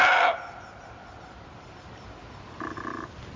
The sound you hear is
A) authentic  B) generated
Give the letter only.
A